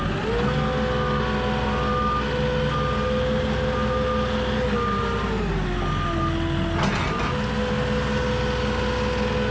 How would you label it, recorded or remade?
recorded